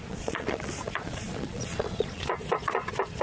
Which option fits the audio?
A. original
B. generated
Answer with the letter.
B